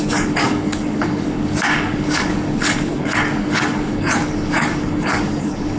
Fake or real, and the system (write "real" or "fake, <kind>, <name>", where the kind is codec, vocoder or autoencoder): fake, codec, DAC